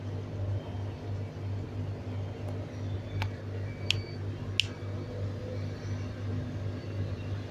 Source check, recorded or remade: recorded